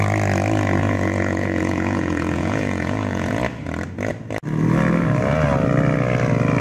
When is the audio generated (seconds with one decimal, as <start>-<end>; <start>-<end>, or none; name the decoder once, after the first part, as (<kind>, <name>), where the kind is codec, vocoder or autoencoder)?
0.8-3.3 (vocoder, Vocos)